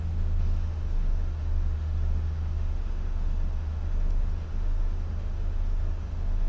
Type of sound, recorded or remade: remade